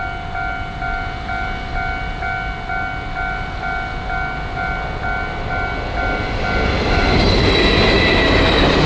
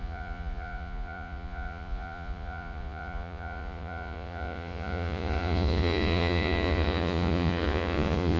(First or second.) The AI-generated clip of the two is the second